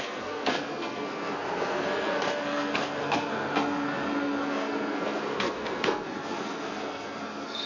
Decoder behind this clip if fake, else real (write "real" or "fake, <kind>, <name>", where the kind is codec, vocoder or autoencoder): fake, codec, SNAC